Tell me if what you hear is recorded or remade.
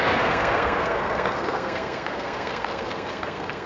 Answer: remade